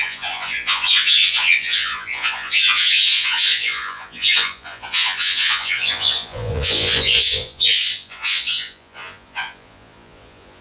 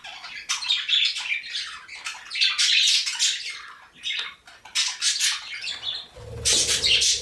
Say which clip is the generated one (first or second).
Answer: first